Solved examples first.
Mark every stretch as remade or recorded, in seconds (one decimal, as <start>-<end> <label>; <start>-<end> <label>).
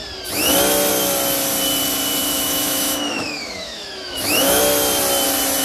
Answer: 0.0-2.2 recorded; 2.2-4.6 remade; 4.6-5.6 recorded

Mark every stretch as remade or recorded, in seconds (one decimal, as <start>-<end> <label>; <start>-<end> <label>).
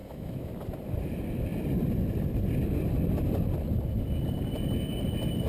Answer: 0.0-0.5 remade; 0.5-5.5 recorded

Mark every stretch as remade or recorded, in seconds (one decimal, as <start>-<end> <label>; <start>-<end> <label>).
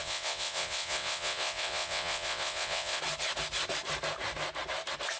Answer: 0.0-3.0 remade; 3.0-5.2 recorded